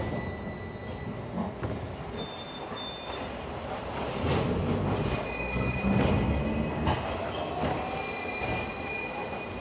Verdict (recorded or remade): recorded